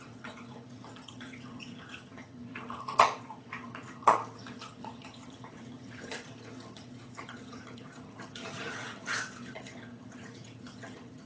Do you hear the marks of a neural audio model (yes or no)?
yes